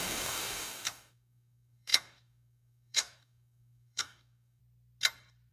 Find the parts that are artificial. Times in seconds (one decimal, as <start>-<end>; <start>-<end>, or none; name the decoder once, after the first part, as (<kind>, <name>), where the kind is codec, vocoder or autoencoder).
0.0-4.6 (codec, DAC)